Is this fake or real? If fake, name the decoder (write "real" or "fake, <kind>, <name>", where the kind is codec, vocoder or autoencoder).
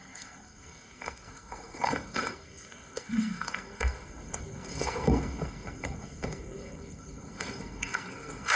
fake, codec, SNAC